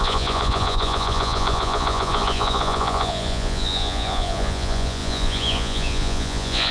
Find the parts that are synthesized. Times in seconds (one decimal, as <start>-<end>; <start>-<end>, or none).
0.0-6.7

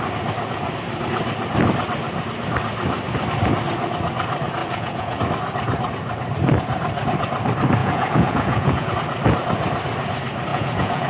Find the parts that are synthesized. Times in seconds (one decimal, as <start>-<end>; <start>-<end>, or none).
4.6-5.2; 7.8-8.9; 10.5-11.1

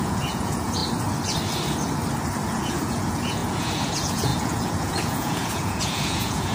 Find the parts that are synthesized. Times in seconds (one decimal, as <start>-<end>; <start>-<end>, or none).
0.0-0.8; 2.5-6.5